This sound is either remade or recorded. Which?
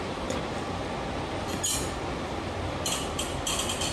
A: recorded